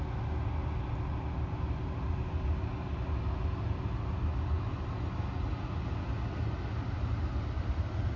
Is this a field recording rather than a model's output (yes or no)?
yes